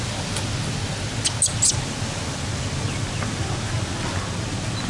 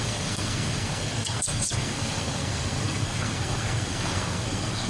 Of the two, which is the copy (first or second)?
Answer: second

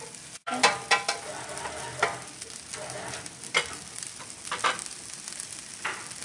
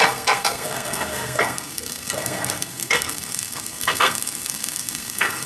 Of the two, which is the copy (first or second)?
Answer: second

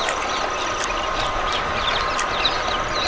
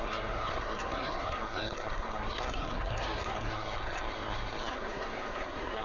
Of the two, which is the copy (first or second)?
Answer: second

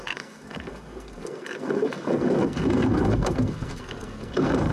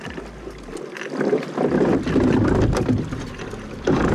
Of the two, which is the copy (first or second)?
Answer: first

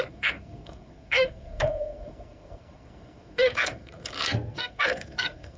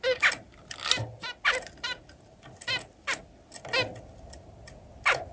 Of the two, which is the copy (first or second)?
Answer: first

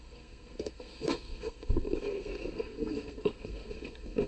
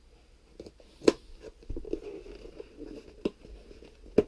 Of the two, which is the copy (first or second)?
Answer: first